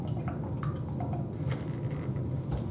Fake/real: real